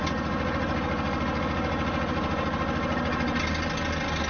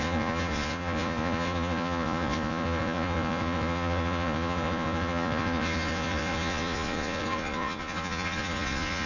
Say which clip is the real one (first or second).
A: first